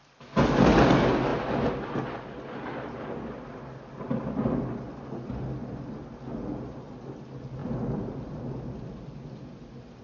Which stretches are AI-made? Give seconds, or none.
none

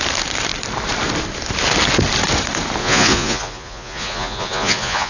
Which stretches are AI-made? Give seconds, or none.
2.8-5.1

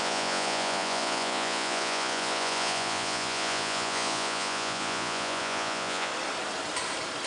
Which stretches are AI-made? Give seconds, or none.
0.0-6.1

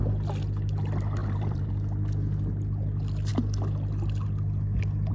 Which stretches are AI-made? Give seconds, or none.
1.2-1.7

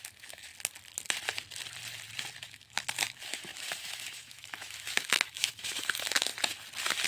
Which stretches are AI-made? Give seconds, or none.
0.0-0.5; 2.4-6.3

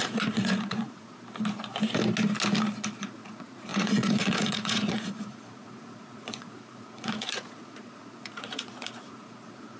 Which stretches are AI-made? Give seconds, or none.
0.0-1.1; 3.0-9.8

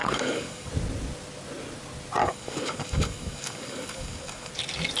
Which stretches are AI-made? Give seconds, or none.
0.0-0.7; 2.2-4.5

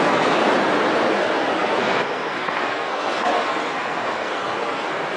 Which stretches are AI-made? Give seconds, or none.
0.0-0.4; 1.1-5.2